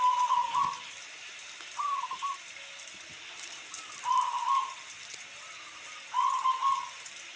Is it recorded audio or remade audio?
recorded